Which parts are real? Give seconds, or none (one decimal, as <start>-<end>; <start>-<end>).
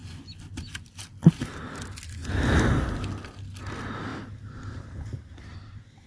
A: 0.0-4.1